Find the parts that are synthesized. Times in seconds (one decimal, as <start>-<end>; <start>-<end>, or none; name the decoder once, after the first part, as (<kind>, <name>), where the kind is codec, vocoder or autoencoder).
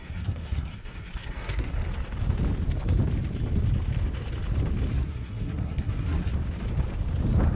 0.0-1.8 (codec, SNAC); 4.9-6.3